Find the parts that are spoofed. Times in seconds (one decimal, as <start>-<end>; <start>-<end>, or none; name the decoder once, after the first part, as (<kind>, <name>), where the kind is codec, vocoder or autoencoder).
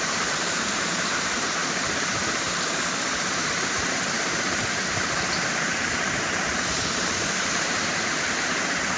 0.0-9.0 (vocoder, BigVGAN v2)